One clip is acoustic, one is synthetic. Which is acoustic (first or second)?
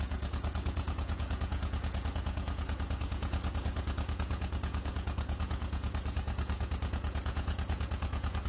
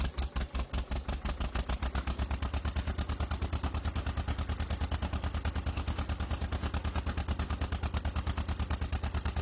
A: second